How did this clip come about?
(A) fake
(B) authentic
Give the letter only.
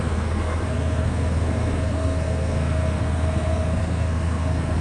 A